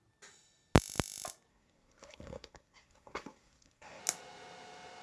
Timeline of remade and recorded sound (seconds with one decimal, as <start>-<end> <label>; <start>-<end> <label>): 0.0-1.5 recorded; 1.5-4.0 remade; 4.0-5.0 recorded